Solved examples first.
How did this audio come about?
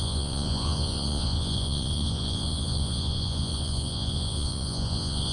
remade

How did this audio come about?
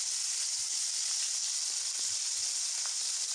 recorded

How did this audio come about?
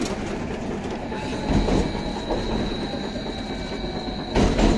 recorded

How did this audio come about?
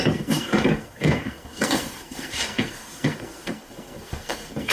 remade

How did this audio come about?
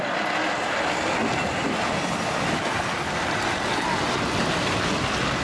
recorded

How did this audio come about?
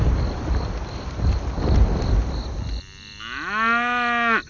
recorded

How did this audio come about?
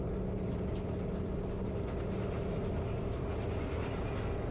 recorded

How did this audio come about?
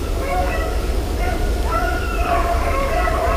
remade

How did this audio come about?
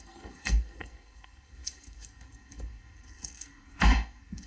remade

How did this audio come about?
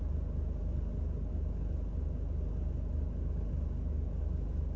recorded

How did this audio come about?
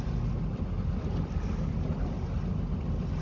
recorded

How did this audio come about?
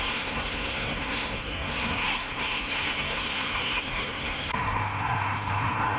remade